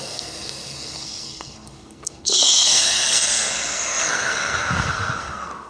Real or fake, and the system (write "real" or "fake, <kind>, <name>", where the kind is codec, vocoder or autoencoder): fake, codec, SNAC